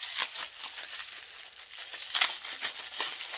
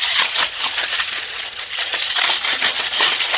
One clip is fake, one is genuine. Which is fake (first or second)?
second